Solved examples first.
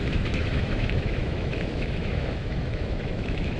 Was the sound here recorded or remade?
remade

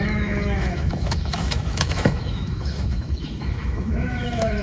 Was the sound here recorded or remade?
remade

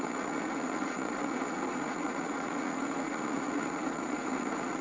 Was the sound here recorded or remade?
remade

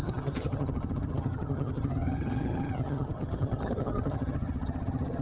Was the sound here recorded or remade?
remade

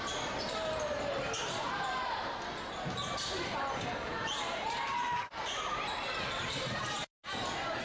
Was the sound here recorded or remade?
remade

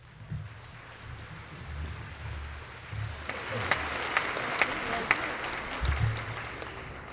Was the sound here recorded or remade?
recorded